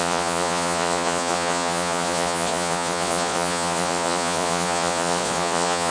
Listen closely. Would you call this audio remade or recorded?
remade